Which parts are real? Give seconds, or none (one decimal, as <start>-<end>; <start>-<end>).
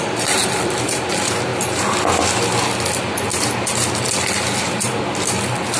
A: 0.0-0.4; 1.1-5.8